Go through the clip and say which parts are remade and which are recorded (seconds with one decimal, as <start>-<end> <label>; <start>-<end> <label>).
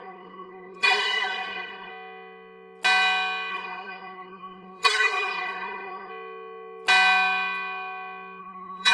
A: 0.0-1.9 remade; 1.9-3.5 recorded; 3.5-6.1 remade; 6.1-8.4 recorded; 8.4-8.9 remade